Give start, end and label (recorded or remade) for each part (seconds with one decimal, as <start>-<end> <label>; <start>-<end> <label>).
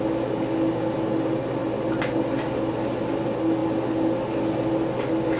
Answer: 0.0-5.4 recorded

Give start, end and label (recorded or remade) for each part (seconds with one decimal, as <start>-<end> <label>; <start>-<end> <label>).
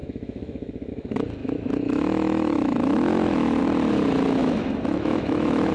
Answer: 0.0-0.9 remade; 0.9-1.4 recorded; 1.4-3.6 remade; 3.6-4.4 recorded; 4.4-5.7 remade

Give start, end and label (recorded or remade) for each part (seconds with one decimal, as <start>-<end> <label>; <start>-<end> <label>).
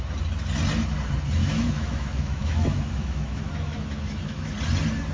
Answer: 0.0-1.4 recorded; 1.4-4.5 remade; 4.5-5.1 recorded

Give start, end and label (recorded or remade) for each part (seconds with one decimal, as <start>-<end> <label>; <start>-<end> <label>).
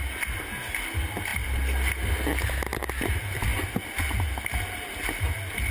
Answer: 0.0-5.7 recorded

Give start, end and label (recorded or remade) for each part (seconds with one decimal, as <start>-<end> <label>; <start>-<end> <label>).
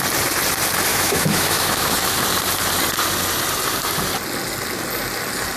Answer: 0.0-0.9 recorded; 0.9-2.1 remade; 2.1-5.6 recorded